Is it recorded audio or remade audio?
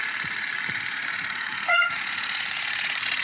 remade